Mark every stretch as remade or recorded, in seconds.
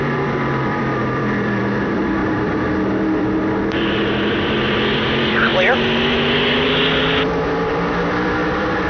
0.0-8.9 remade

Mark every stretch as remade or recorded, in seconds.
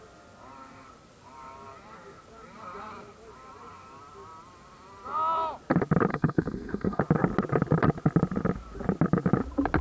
0.0-6.1 recorded; 6.1-7.0 remade; 7.0-9.8 recorded